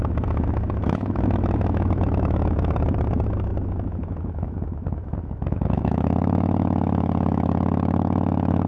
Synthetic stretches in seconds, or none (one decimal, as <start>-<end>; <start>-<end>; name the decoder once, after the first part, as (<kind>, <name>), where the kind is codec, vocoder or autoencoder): 0.0-8.7 (autoencoder, DAC-VAE)